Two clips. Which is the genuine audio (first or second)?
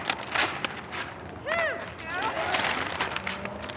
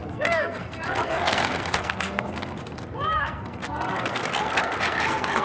first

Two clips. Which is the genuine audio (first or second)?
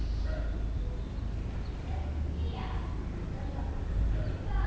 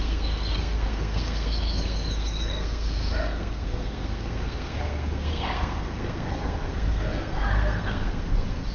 first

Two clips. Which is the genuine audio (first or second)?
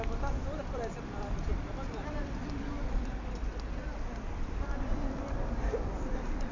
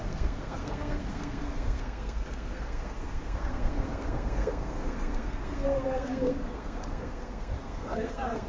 first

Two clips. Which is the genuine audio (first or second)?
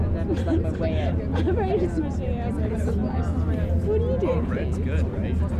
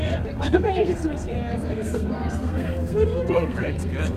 first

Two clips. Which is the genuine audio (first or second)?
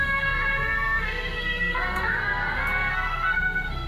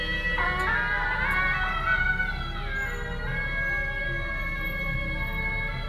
second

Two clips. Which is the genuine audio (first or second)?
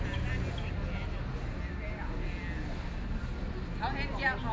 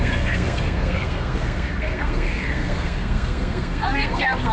first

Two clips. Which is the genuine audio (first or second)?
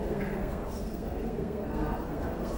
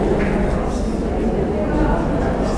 second